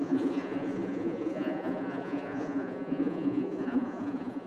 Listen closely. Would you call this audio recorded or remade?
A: remade